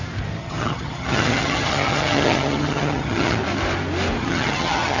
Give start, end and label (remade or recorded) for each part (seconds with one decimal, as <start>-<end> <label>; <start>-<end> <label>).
0.0-0.4 recorded; 0.4-3.4 remade; 3.4-4.2 recorded; 4.2-5.0 remade